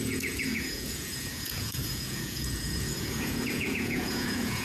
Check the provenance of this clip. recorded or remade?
remade